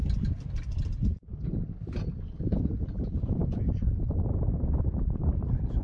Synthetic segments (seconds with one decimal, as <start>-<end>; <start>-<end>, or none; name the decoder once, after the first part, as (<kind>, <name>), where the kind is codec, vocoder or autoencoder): 0.6-5.8 (vocoder, BigVGAN v2)

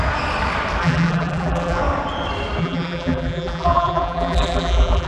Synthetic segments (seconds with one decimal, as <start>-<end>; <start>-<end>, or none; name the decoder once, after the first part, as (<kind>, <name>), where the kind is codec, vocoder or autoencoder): 0.8-1.8 (vocoder, BigVGAN v2); 2.6-5.1

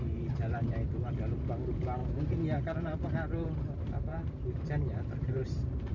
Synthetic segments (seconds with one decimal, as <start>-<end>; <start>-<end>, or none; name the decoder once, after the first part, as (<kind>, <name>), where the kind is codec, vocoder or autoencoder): 0.0-5.9 (vocoder, BigVGAN v2)

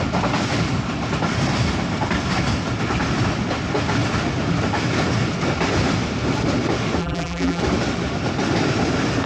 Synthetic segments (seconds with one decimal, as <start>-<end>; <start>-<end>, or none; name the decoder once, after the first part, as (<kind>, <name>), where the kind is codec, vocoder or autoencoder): 7.0-7.6 (vocoder, BigVGAN v2)